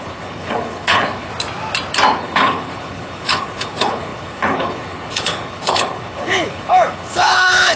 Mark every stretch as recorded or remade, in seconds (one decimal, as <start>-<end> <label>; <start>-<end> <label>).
0.0-1.3 remade; 1.3-2.1 recorded; 2.1-7.8 remade